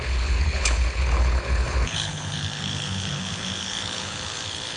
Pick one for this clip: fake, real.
fake